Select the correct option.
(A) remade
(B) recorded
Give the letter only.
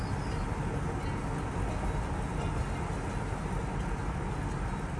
B